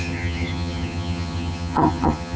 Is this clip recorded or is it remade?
remade